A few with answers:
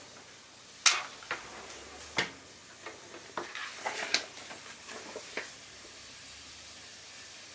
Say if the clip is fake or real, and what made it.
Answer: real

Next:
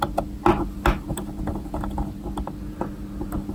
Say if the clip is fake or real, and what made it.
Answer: real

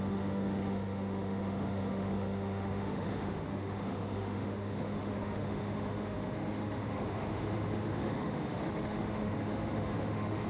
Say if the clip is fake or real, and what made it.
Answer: fake, autoencoder, DAC-VAE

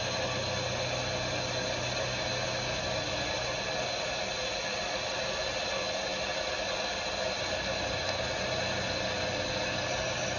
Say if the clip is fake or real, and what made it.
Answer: real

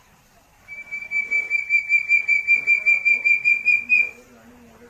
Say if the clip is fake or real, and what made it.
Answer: real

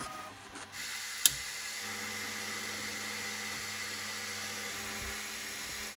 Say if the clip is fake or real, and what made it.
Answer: real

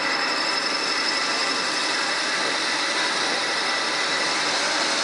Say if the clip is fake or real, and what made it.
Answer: real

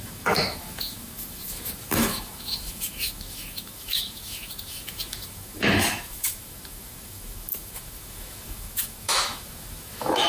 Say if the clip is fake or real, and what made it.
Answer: fake, autoencoder, DAC-VAE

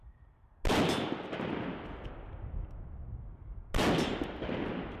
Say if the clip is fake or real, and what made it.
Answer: real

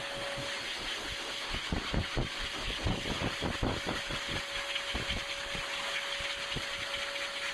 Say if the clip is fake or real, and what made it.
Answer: real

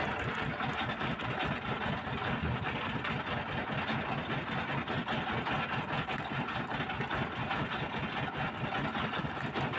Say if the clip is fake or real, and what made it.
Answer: real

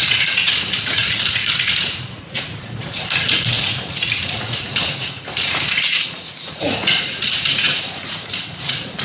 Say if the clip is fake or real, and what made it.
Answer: fake, vocoder, Vocos